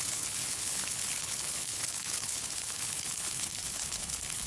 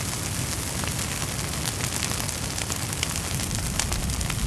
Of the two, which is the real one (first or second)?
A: second